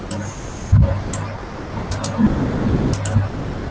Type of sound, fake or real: real